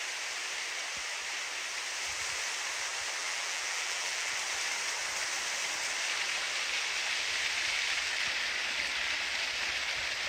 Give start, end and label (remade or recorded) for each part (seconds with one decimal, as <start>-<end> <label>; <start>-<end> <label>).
0.0-3.2 recorded; 3.2-4.3 remade; 4.3-10.3 recorded